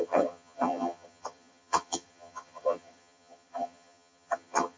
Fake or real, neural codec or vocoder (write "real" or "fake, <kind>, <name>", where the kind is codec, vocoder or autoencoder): fake, vocoder, HiFi-GAN